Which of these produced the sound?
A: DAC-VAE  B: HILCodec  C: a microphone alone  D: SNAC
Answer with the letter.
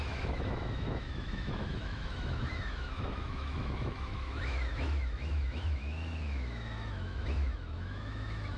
A